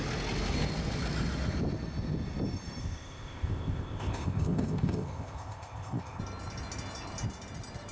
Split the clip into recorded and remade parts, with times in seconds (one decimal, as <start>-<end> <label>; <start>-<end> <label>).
0.0-2.8 recorded; 2.8-6.2 remade; 6.2-7.9 recorded